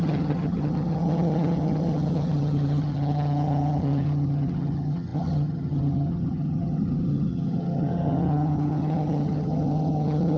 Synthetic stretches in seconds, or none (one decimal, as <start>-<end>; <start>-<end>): 0.0-10.4